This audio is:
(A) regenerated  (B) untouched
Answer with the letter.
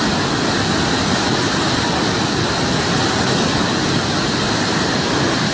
A